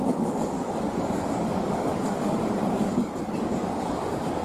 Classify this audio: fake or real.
fake